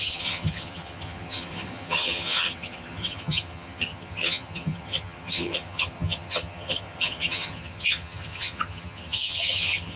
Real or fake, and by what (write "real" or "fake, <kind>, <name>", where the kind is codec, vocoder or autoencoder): fake, vocoder, HiFi-GAN